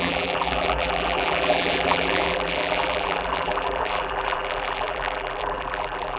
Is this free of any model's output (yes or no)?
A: no